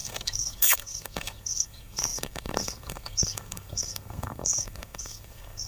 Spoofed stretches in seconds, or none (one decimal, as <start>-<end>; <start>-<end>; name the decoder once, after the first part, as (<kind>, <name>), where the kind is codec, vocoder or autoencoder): 0.0-5.7 (codec, SNAC)